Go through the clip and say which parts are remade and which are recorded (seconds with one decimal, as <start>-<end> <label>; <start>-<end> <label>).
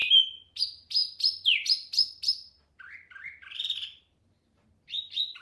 0.0-0.6 recorded; 0.6-5.4 remade